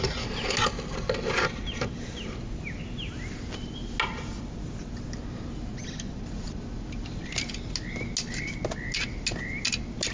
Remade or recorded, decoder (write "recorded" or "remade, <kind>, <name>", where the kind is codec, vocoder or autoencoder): recorded